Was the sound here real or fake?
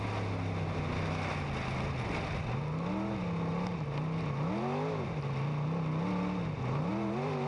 real